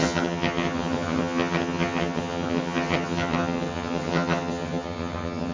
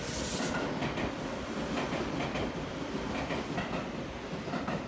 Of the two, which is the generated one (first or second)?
first